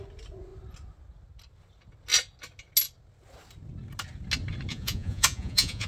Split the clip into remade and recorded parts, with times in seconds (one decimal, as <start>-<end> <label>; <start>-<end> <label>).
0.0-4.7 recorded; 4.7-5.9 remade